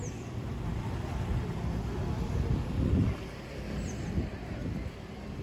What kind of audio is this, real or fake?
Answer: fake